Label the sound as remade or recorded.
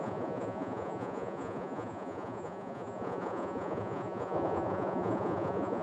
remade